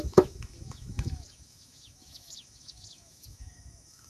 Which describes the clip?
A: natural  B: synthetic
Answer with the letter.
B